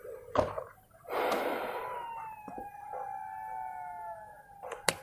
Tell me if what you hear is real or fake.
real